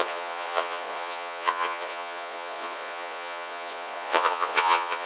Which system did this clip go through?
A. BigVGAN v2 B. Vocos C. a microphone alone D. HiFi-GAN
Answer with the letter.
B